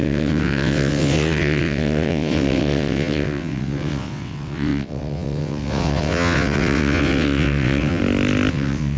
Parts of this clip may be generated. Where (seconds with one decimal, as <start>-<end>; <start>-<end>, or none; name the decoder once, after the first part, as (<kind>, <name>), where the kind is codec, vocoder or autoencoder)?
0.0-8.0 (vocoder, WaveNeXt); 8.5-9.0